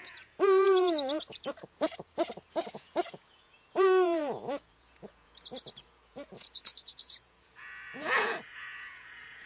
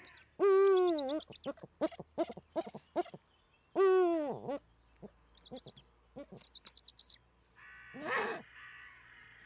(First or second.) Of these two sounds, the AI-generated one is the first